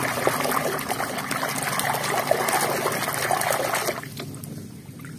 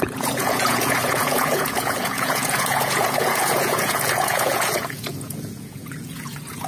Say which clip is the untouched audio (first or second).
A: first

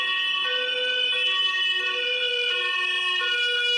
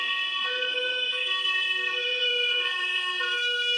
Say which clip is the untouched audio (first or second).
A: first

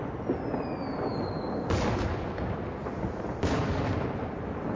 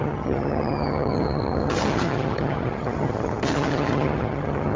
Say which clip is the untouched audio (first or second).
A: first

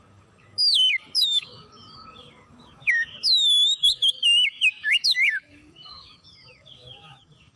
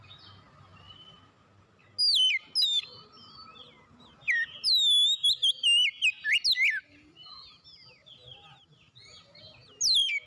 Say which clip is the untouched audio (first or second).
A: second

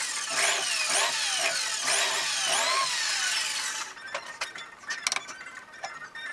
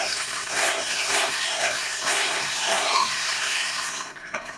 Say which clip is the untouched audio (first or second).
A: first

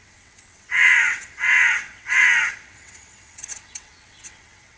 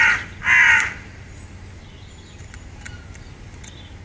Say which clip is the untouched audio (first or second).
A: second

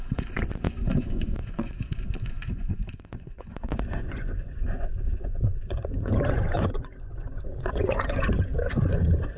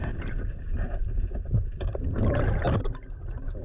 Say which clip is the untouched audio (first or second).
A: second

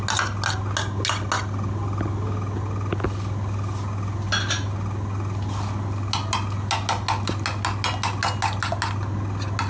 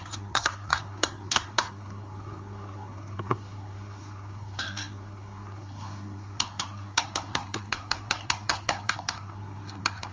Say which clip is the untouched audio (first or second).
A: first